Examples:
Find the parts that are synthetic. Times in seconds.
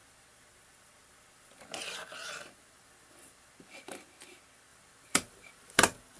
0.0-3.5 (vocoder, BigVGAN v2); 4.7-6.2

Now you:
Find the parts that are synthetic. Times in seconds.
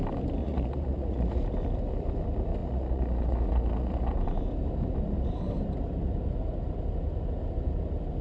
0.4-1.4 (vocoder, Vocos); 2.6-4.2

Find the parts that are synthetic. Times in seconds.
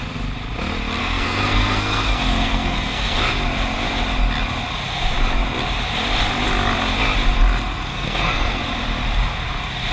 1.0-3.2 (codec, SNAC); 7.9-8.6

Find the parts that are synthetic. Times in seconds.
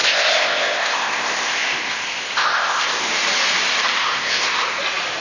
0.0-3.1 (codec, ZipCodec); 4.0-4.8